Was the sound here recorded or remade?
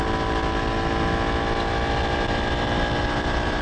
recorded